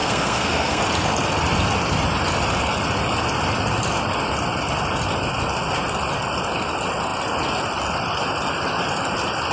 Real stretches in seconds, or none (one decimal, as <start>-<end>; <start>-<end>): 0.8-9.5